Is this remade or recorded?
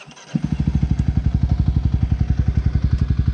recorded